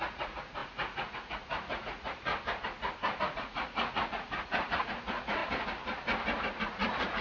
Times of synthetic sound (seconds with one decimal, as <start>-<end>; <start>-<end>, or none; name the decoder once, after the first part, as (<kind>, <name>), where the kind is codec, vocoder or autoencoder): 0.0-2.3 (vocoder, Vocos); 3.2-5.4; 6.6-7.2